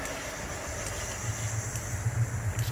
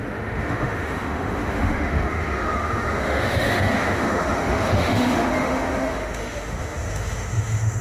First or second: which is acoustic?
first